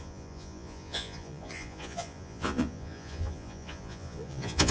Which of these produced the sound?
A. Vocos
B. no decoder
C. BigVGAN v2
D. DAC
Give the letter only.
A